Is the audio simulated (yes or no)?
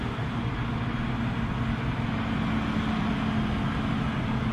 no